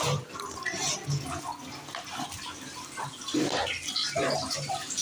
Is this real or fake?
real